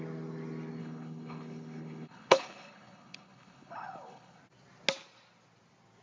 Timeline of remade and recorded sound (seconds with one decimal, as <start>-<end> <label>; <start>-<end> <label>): 0.0-0.8 recorded; 0.8-4.4 remade; 4.4-6.0 recorded